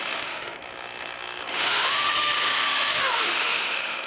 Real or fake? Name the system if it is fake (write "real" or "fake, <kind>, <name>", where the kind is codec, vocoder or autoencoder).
fake, autoencoder, DAC-VAE